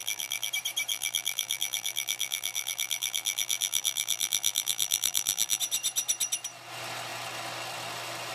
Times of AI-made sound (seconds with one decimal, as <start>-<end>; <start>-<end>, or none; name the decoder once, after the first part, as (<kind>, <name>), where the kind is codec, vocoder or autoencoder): 0.0-0.5 (vocoder, BigVGAN v2); 0.9-5.6